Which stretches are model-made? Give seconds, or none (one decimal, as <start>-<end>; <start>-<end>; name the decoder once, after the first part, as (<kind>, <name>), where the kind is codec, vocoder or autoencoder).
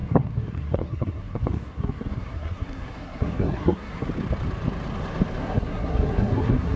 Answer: 0.0-4.1 (codec, SNAC); 5.4-6.8